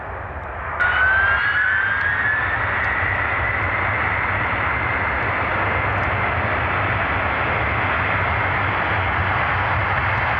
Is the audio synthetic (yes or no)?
no